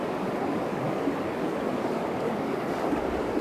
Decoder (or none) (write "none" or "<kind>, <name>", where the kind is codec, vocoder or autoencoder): codec, DAC